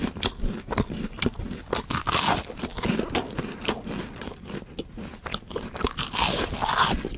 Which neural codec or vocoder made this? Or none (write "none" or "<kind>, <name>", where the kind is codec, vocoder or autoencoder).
none